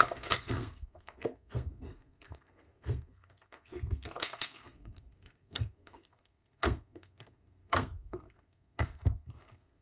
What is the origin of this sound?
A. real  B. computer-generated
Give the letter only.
B